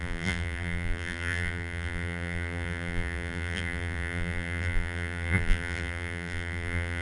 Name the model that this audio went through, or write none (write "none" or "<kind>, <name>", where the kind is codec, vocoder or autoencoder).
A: vocoder, BigVGAN v2